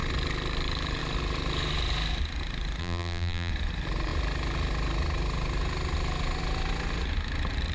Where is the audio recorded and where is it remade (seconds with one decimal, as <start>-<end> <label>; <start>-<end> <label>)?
0.0-2.8 recorded; 2.8-3.5 remade; 3.5-7.7 recorded